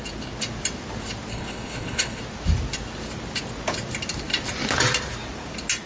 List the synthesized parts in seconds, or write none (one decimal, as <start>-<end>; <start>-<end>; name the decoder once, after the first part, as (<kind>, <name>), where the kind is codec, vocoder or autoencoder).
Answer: 1.3-2.2 (codec, HILCodec)